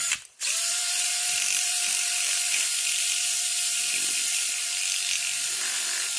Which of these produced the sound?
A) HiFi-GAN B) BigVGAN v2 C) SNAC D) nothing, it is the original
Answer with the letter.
B